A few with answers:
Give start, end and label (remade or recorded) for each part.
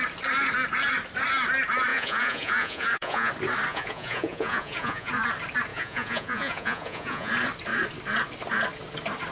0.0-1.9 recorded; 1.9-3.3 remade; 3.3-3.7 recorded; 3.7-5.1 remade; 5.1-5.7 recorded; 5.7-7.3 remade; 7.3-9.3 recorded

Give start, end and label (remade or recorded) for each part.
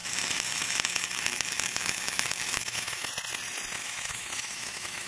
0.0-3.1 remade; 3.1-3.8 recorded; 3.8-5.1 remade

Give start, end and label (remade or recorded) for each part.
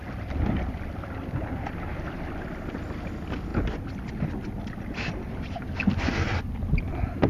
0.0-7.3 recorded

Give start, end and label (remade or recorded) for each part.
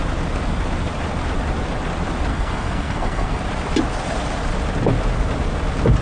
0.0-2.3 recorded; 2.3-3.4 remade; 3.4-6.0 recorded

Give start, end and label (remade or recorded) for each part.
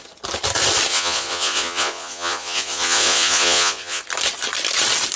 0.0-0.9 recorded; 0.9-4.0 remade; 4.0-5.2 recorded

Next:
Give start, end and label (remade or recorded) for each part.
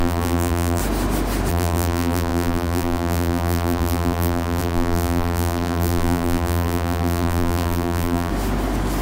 0.0-0.8 remade; 0.8-1.5 recorded; 1.5-8.3 remade; 8.3-9.0 recorded